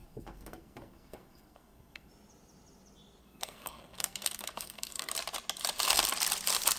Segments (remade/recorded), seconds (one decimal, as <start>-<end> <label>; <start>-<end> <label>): 0.0-2.1 remade; 2.1-3.2 recorded; 3.2-5.1 remade; 5.1-6.8 recorded